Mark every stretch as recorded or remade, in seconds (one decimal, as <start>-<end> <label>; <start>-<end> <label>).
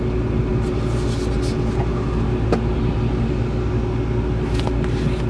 0.0-5.3 recorded